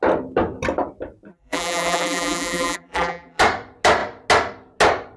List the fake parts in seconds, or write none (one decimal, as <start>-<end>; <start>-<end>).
1.3-3.4